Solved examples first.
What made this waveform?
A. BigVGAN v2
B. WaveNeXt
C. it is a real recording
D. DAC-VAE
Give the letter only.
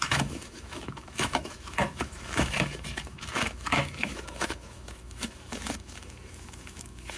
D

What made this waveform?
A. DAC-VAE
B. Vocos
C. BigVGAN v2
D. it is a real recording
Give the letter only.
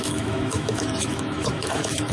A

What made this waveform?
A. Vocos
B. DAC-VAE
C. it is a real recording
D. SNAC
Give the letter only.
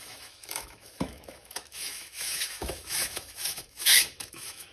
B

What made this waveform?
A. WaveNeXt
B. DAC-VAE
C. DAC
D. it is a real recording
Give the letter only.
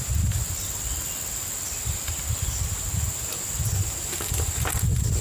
D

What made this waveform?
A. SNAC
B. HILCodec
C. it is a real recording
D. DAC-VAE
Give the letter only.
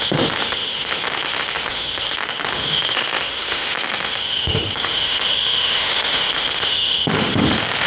D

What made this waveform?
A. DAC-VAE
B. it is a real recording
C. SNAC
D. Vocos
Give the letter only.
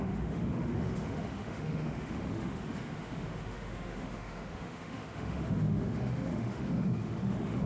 A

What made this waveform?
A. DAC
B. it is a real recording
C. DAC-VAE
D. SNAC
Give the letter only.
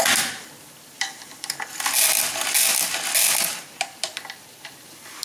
B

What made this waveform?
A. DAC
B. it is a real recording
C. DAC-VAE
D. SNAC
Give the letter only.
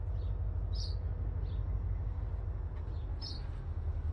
B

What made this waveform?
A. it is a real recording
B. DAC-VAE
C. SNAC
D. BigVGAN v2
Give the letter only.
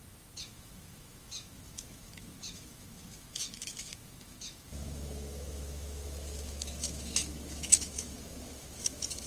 B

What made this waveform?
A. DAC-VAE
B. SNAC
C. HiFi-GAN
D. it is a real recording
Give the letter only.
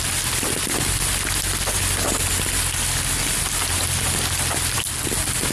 D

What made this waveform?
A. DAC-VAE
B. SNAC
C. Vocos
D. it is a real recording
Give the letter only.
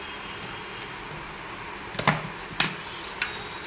D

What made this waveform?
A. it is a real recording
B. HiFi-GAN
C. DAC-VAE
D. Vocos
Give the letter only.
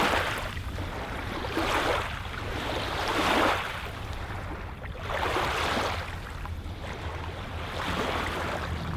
A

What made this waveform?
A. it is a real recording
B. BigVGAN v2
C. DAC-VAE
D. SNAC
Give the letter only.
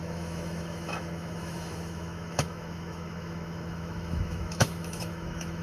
C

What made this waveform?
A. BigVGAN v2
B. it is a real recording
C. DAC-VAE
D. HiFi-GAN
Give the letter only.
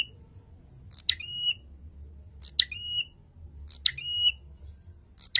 B